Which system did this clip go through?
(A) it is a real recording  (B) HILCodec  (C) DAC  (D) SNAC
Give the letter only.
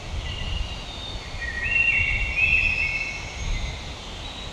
A